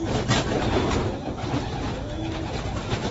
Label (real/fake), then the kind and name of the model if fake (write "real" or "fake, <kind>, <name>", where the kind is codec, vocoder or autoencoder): real